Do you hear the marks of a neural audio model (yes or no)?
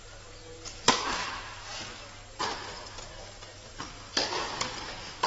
no